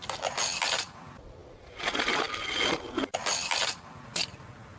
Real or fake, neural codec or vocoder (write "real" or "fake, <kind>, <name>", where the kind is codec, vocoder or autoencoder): real